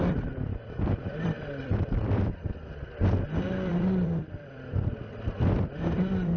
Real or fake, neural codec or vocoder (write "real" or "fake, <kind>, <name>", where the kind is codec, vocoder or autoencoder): fake, vocoder, BigVGAN v2